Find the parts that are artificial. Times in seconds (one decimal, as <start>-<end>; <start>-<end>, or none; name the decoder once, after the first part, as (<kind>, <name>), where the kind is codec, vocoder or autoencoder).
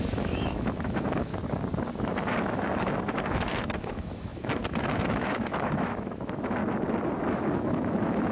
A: 0.0-1.3 (autoencoder, DAC-VAE); 2.4-6.6; 7.3-8.3